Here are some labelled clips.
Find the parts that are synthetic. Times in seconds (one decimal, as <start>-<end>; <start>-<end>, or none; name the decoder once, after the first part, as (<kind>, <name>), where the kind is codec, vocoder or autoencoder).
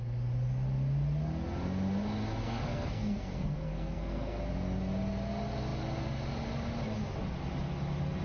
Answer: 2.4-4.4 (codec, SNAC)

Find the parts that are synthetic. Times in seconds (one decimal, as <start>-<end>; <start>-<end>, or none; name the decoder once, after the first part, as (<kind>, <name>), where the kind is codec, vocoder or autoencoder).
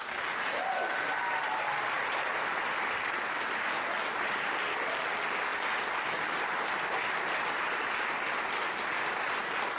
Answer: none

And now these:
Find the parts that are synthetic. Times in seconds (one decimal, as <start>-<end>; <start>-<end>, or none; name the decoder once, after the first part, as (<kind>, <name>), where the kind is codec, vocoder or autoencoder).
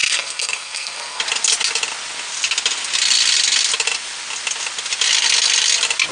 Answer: 0.0-1.2 (codec, SNAC)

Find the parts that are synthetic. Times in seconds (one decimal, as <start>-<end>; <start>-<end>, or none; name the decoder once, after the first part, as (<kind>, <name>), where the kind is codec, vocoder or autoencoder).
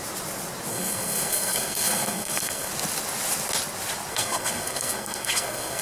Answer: 0.7-2.7 (codec, SNAC); 4.1-5.8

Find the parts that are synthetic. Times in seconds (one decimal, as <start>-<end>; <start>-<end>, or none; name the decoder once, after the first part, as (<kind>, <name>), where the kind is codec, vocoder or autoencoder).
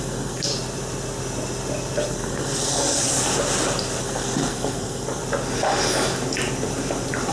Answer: 0.0-0.5 (codec, SNAC); 2.1-3.0; 4.0-5.2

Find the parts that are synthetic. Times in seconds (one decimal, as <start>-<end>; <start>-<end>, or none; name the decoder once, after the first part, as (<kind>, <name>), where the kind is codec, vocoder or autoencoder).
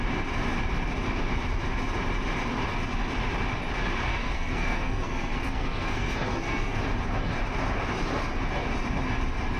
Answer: 4.1-6.8 (codec, SNAC)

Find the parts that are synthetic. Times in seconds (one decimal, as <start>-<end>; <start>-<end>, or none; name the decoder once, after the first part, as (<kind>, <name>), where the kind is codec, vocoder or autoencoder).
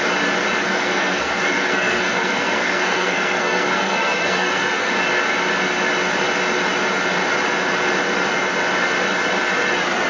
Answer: 0.6-4.9 (codec, SNAC)